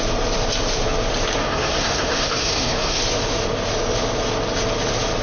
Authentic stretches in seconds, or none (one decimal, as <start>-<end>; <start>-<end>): 0.0-1.4; 3.0-5.2